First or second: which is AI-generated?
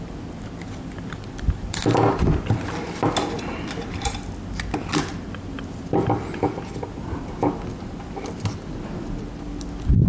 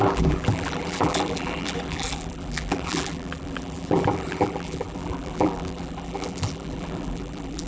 second